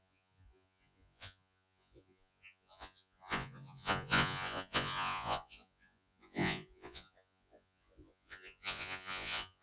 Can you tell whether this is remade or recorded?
remade